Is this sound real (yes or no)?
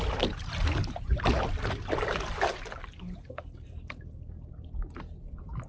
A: yes